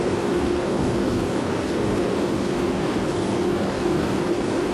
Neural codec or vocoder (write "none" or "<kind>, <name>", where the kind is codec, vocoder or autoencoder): codec, DAC